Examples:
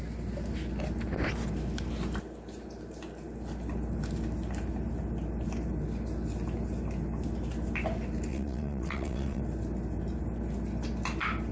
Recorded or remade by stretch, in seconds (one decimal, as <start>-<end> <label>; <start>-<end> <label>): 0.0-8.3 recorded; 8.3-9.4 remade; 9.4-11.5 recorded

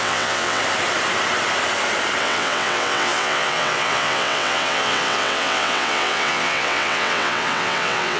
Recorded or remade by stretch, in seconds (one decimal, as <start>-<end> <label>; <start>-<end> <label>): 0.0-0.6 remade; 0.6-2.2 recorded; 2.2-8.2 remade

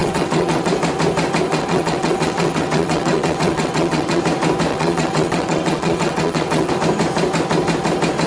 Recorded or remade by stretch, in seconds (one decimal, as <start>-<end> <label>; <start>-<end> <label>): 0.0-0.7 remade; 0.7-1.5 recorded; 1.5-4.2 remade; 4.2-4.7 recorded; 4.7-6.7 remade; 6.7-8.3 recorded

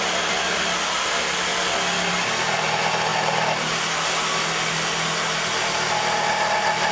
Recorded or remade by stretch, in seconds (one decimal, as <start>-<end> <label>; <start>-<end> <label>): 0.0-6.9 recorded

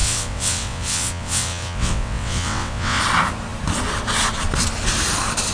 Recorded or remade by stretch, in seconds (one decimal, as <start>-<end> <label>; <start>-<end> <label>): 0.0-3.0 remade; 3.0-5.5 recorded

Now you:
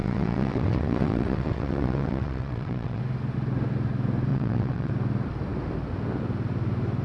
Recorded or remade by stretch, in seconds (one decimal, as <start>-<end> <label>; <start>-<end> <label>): 0.0-3.0 remade; 3.0-4.3 recorded; 4.3-4.9 remade; 4.9-7.0 recorded

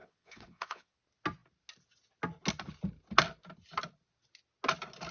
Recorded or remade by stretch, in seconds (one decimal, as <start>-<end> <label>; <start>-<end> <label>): 0.0-0.9 remade; 0.9-5.1 recorded

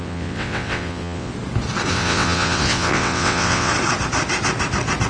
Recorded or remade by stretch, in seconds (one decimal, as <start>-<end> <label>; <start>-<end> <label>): 0.0-1.3 remade; 1.3-1.9 recorded; 1.9-3.7 remade; 3.7-5.1 recorded